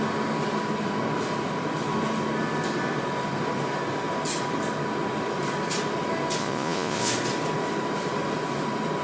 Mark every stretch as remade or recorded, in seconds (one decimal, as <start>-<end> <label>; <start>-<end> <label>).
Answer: 0.0-6.4 recorded; 6.4-7.1 remade; 7.1-9.0 recorded